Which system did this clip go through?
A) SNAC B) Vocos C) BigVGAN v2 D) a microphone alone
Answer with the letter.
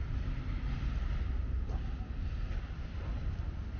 D